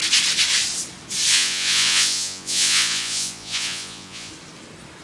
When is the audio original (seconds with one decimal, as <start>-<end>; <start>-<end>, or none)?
0.0-1.3; 4.3-5.0